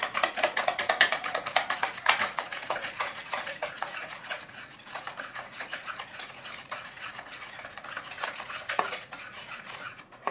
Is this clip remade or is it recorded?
remade